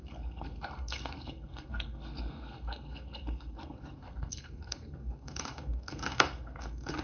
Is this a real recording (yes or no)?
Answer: no